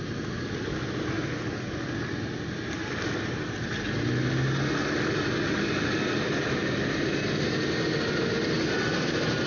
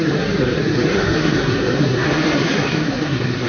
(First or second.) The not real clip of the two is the second